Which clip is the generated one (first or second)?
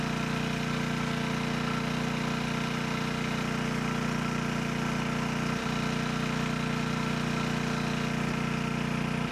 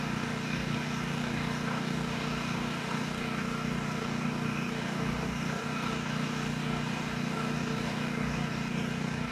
second